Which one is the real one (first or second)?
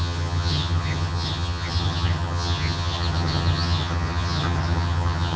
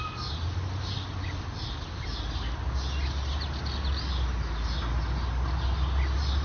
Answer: second